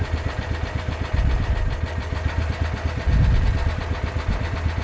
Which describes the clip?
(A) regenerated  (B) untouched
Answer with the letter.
B